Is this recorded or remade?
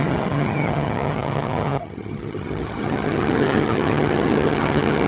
remade